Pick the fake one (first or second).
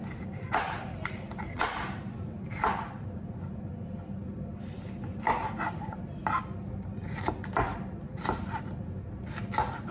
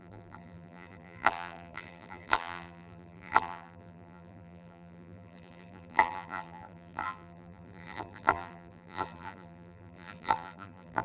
second